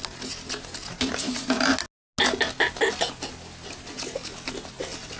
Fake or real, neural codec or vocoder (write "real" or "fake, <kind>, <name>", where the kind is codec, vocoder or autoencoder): real